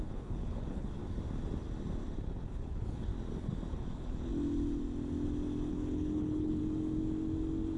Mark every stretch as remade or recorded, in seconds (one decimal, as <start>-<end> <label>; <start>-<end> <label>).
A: 0.0-1.0 remade; 1.0-2.5 recorded; 2.5-3.1 remade; 3.1-3.7 recorded; 3.7-4.3 remade; 4.3-5.7 recorded; 5.7-6.6 remade; 6.6-7.8 recorded